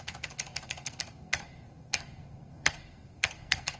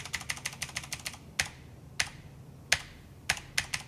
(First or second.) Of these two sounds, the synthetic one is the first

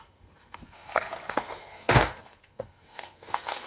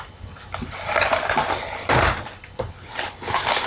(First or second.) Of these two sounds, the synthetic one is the first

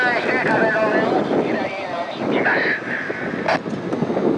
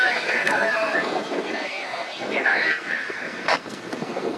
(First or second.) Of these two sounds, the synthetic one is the second